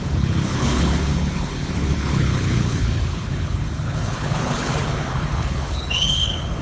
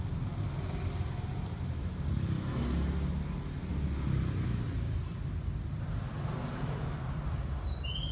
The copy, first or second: first